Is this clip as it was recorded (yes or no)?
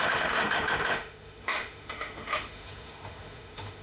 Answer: no